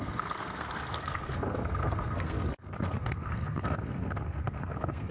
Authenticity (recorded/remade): remade